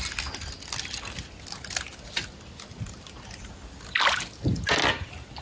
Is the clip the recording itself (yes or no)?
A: yes